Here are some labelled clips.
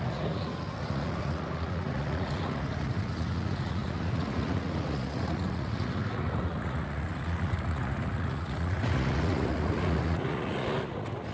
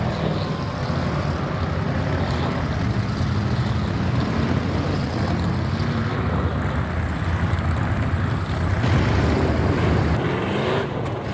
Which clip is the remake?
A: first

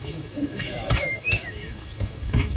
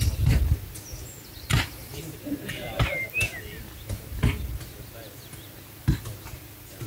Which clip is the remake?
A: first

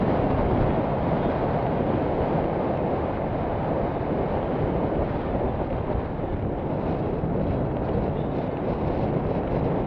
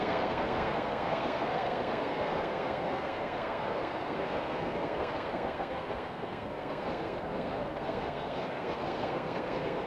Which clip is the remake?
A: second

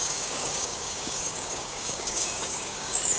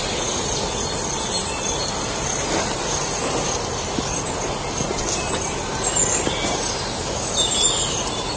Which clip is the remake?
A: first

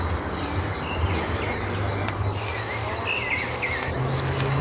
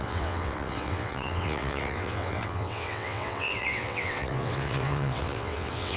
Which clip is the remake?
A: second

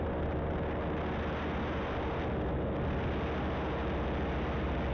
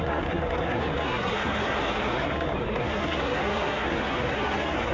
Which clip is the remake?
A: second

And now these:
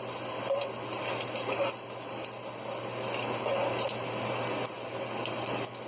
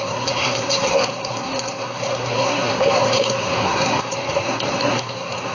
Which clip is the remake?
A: second